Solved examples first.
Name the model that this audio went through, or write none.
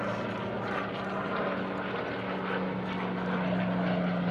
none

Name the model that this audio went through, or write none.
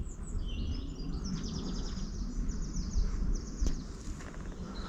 none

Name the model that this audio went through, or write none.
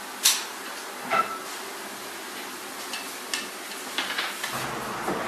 none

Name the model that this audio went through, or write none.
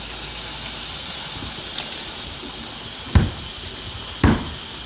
none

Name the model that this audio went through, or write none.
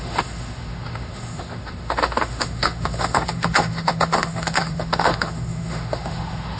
autoencoder, DAC-VAE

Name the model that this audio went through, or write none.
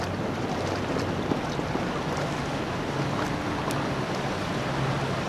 none